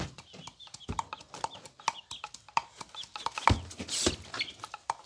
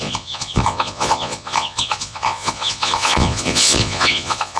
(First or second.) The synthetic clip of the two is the second